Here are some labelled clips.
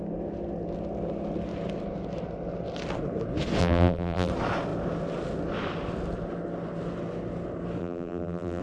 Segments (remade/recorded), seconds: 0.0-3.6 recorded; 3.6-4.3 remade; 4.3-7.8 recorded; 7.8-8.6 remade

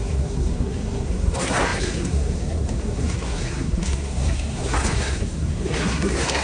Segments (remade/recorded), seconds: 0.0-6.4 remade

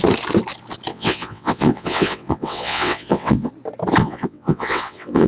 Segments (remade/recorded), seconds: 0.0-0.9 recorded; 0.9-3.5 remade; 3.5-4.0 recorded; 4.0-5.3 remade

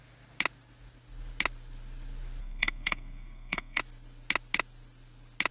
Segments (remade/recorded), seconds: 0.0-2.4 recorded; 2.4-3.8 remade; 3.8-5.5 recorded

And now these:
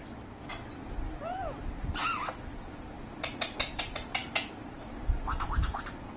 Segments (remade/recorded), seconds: 0.0-6.2 recorded

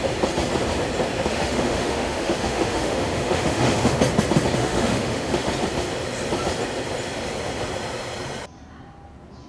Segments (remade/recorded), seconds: 0.0-1.3 recorded; 1.3-4.0 remade; 4.0-4.6 recorded; 4.6-5.5 remade; 5.5-9.5 recorded